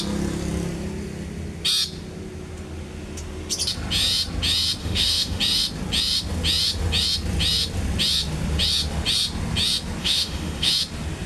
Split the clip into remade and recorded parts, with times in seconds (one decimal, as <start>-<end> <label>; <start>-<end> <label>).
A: 0.0-4.8 recorded; 4.8-5.4 remade; 5.4-10.0 recorded; 10.0-10.7 remade; 10.7-11.3 recorded

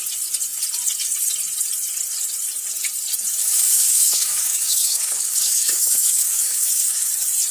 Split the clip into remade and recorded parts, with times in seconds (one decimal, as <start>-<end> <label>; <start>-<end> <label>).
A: 0.0-3.4 recorded; 3.4-7.1 remade; 7.1-7.5 recorded

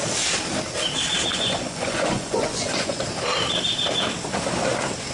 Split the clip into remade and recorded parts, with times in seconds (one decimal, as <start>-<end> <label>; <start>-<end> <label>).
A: 0.0-1.3 recorded; 1.3-3.0 remade; 3.0-5.1 recorded

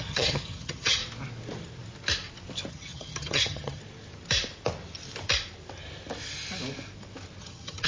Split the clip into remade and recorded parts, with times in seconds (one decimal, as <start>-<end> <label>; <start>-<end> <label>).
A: 0.0-1.0 remade; 1.0-2.7 recorded; 2.7-3.8 remade; 3.8-7.4 recorded; 7.4-7.9 remade

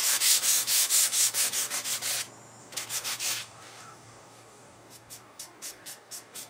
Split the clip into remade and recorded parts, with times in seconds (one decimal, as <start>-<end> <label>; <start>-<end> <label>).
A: 0.0-1.9 remade; 1.9-2.6 recorded; 2.6-6.5 remade

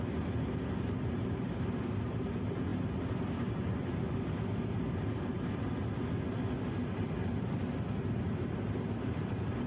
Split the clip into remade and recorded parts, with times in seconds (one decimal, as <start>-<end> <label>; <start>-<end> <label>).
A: 0.0-9.7 recorded

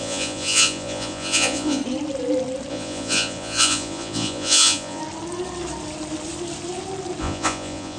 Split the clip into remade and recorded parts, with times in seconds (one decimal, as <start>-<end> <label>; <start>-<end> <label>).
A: 0.0-1.8 remade; 1.8-2.7 recorded; 2.7-5.0 remade; 5.0-7.2 recorded; 7.2-8.0 remade